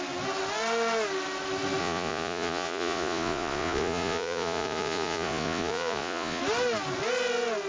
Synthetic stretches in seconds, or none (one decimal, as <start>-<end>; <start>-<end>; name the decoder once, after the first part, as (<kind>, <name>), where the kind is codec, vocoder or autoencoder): 1.8-6.4 (vocoder, Vocos)